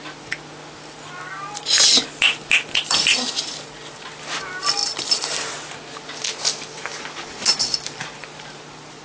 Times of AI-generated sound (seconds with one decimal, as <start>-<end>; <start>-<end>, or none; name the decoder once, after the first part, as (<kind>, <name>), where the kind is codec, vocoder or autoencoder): none